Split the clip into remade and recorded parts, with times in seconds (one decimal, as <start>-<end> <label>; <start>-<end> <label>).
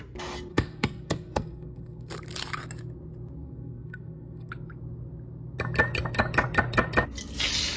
0.0-0.5 recorded; 0.5-2.1 remade; 2.1-3.4 recorded; 3.4-4.5 remade; 4.5-7.8 recorded